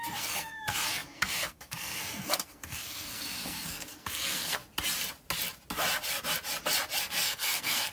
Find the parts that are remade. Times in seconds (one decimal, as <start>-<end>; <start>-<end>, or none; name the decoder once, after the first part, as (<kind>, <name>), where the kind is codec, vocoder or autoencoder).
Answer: 0.0-4.6 (codec, SNAC); 7.0-7.9